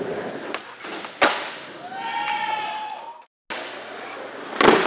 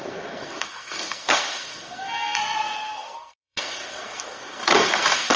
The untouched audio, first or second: first